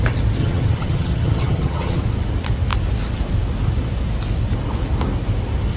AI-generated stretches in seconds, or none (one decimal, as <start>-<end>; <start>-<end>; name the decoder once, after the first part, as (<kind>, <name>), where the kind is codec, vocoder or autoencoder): 0.4-2.0 (vocoder, HiFi-GAN)